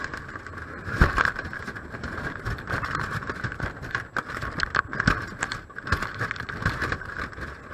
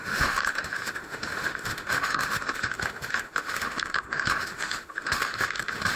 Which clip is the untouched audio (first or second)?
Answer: first